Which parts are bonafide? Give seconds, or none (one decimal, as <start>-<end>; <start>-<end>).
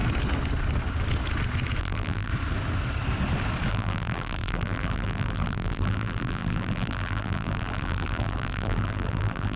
0.0-1.8; 2.3-3.7